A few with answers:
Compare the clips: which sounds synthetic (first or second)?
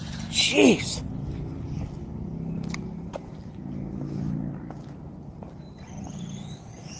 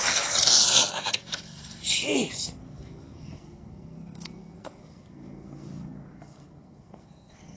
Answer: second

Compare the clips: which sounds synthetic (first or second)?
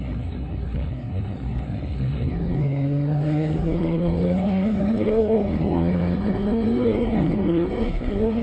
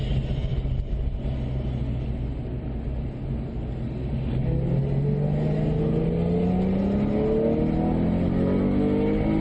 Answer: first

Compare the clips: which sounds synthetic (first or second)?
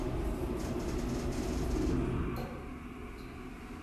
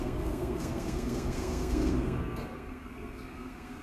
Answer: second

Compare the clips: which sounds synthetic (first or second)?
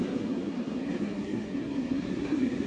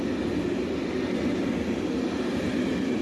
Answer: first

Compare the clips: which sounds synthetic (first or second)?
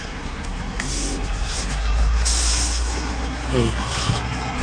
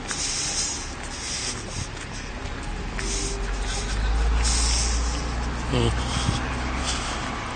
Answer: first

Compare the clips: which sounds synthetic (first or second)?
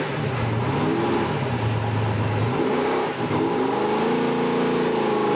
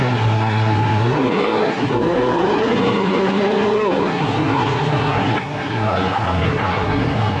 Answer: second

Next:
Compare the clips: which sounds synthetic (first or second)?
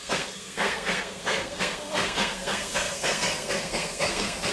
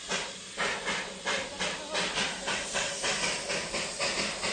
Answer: first